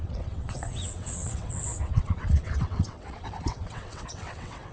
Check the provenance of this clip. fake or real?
fake